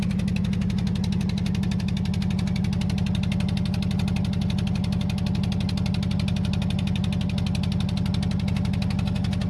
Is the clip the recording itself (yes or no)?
yes